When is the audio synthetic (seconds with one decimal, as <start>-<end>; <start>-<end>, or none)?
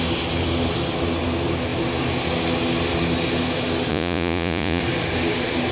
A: 3.9-4.8